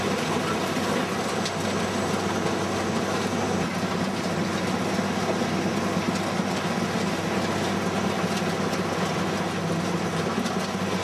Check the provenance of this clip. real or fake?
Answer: real